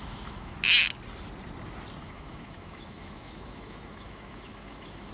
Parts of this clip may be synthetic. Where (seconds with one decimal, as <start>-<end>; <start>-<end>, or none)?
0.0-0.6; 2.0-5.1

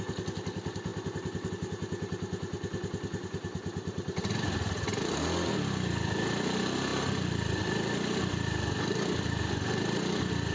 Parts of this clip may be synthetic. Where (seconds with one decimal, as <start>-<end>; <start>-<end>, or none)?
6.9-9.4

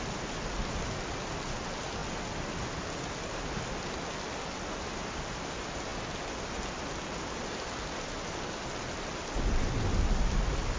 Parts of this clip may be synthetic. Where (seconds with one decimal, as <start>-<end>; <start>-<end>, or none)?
none

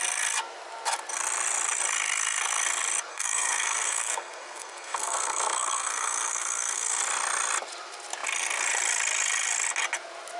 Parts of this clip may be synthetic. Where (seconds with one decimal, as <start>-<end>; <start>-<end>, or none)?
3.1-7.0

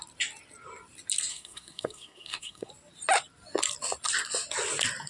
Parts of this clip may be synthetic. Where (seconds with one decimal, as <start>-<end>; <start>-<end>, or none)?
1.3-2.7